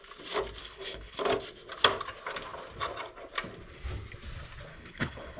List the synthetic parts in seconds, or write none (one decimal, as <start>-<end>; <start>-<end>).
0.6-1.2; 4.7-5.4